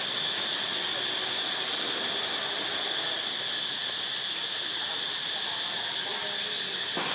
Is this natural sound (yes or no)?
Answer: yes